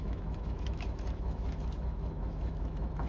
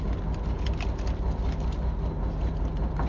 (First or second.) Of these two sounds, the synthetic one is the first